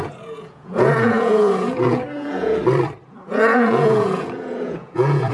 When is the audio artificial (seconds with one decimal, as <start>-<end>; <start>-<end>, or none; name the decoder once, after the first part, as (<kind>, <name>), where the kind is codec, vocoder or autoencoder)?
0.0-2.6 (vocoder, Vocos); 3.2-5.3